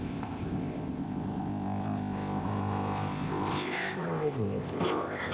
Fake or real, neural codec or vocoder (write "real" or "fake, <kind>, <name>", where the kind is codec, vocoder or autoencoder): fake, codec, ZipCodec